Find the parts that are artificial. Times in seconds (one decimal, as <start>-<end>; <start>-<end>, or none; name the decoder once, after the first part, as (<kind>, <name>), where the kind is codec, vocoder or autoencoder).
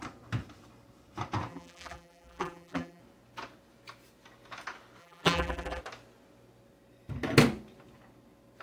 1.5-3.0 (vocoder, BigVGAN v2); 5.0-5.8